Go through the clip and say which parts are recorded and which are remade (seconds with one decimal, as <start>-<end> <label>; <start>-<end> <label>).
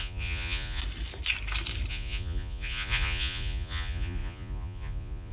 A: 0.0-0.8 remade; 0.8-1.9 recorded; 1.9-5.3 remade